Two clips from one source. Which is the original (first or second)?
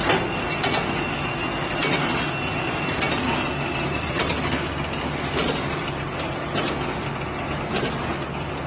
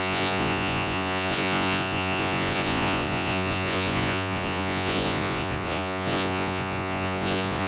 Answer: first